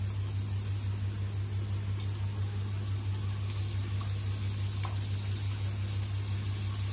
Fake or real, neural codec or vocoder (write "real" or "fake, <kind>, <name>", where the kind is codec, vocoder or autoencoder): real